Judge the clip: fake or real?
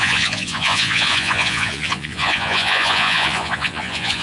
fake